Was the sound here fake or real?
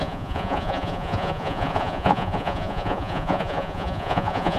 fake